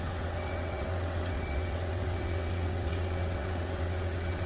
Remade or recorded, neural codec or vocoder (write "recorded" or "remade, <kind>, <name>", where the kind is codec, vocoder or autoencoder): remade, vocoder, WaveNeXt